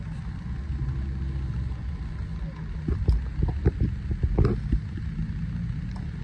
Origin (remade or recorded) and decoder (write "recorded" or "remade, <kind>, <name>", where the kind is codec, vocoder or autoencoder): recorded